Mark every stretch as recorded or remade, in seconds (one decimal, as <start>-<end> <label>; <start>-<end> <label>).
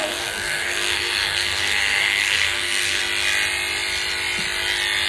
0.0-3.0 remade; 3.0-5.1 recorded